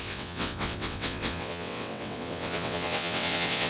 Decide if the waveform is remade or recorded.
remade